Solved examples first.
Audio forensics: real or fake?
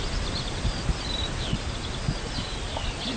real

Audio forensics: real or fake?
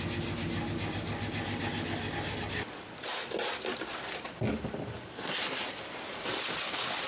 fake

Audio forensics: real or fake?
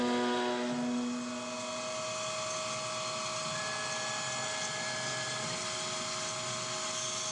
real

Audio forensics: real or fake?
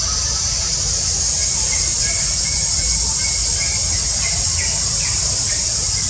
fake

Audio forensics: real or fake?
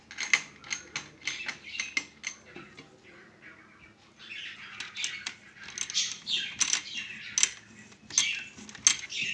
real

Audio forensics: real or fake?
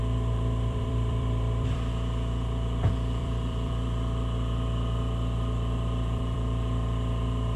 fake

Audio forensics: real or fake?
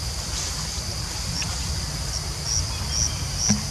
real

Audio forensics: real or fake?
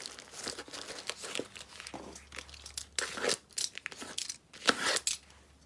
real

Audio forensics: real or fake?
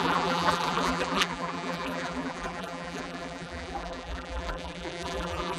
fake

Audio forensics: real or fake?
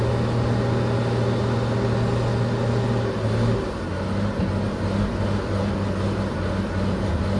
real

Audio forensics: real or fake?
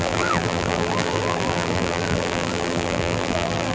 fake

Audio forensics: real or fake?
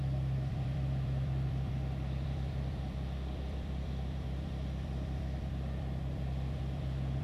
fake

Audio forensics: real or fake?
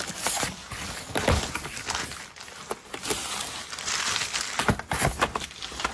real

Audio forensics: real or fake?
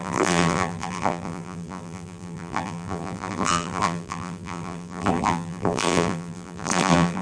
fake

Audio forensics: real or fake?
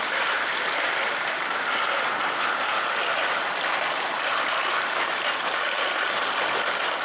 real